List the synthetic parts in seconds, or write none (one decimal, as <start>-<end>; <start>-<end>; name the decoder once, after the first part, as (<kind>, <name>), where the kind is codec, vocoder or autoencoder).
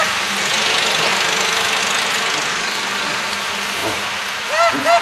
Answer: 2.5-3.2 (codec, DAC)